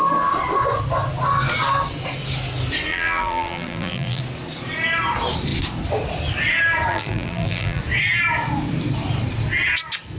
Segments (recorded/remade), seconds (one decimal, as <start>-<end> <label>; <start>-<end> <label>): 0.0-2.9 recorded; 2.9-4.2 remade; 4.2-6.9 recorded; 6.9-7.8 remade; 7.8-10.2 recorded